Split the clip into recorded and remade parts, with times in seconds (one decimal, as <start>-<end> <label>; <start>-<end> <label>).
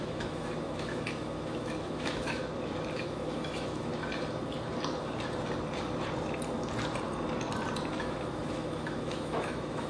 0.0-2.4 remade; 2.4-3.0 recorded; 3.0-3.9 remade; 3.9-8.0 recorded; 8.0-9.9 remade